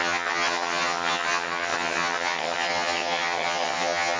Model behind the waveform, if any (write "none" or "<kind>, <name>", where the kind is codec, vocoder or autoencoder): vocoder, HiFi-GAN